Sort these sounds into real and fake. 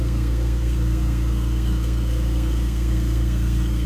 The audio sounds fake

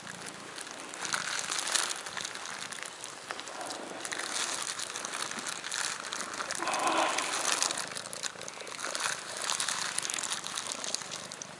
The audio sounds real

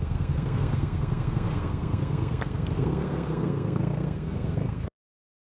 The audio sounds fake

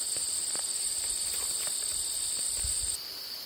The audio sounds real